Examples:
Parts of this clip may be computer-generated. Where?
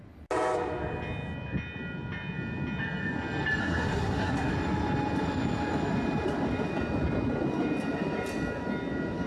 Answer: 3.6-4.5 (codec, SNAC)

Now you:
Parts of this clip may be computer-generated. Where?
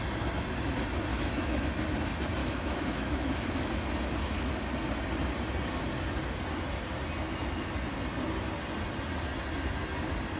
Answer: 1.1-1.7 (autoencoder, DAC-VAE); 2.4-3.7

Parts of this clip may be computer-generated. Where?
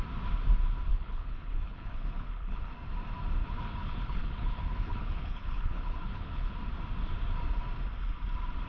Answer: 0.9-2.7 (codec, HILCodec); 3.4-6.6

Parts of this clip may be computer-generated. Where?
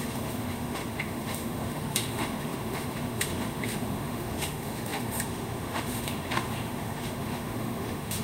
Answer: 0.0-8.2 (autoencoder, DAC-VAE)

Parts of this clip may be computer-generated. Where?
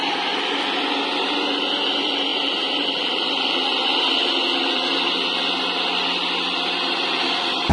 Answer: none